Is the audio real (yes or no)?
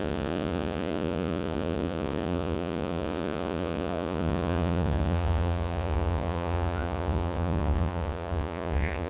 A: no